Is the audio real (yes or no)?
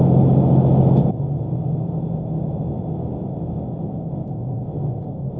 yes